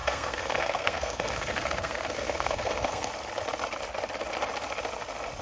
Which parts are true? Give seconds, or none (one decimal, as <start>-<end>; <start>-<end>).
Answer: 3.1-5.4